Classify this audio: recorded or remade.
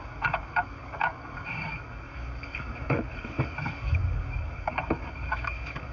remade